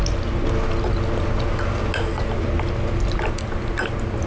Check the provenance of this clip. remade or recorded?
recorded